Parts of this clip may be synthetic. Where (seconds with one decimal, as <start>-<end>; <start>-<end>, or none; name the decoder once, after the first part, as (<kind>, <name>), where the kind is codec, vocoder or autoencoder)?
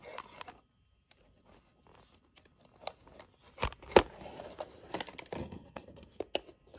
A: 5.4-6.2 (codec, SNAC)